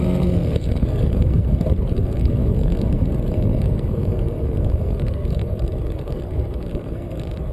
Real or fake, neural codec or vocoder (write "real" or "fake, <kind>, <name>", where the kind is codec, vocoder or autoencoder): fake, codec, SNAC